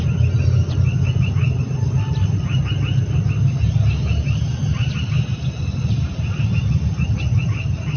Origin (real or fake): real